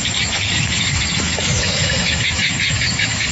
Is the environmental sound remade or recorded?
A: remade